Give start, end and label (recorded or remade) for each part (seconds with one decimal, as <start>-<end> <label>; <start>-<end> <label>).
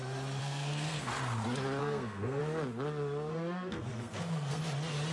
0.0-0.4 recorded; 0.4-1.1 remade; 1.1-1.8 recorded; 1.8-2.4 remade; 2.4-3.3 recorded; 3.3-4.6 remade; 4.6-5.1 recorded